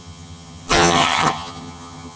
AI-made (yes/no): yes